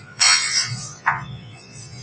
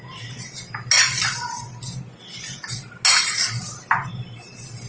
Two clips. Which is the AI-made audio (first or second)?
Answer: first